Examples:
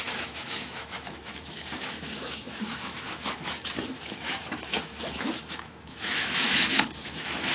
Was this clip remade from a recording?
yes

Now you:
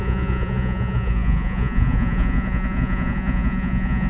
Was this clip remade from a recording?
yes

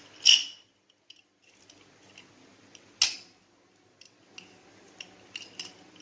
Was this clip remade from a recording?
no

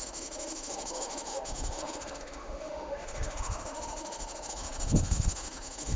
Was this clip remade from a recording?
yes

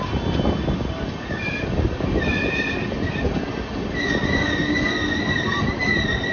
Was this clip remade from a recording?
no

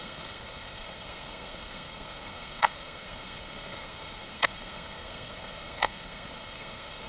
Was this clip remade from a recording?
yes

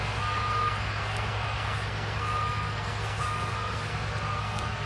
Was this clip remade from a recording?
yes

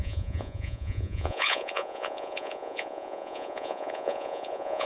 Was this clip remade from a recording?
yes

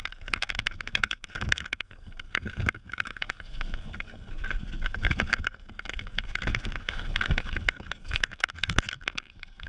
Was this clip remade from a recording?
yes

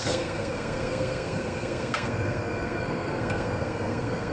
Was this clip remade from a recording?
yes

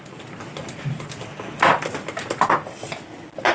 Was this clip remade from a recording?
no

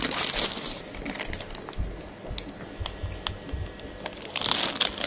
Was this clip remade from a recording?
no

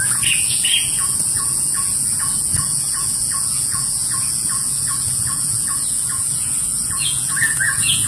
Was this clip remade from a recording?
yes